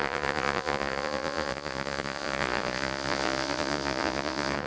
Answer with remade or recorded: remade